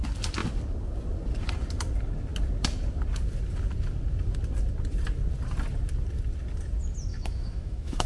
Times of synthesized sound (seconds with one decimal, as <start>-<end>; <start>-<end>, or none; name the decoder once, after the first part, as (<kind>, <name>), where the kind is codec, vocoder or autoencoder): 7.1-8.1 (autoencoder, DAC-VAE)